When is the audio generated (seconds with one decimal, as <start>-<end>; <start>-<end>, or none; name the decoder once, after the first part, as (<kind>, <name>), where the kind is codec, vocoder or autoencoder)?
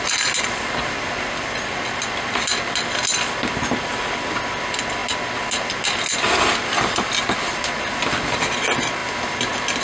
none